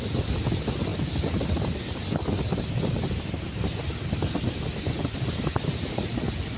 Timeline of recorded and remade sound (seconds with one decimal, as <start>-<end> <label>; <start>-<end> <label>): 0.0-6.6 recorded